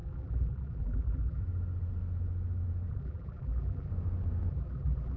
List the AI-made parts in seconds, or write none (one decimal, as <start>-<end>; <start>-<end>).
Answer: 0.0-1.4; 2.9-3.9; 4.5-5.2